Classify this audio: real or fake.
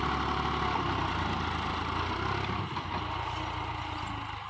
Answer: real